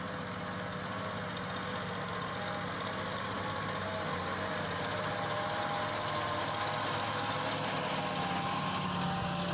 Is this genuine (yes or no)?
yes